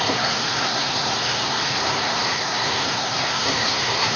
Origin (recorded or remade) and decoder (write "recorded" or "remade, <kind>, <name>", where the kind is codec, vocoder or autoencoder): remade, codec, SNAC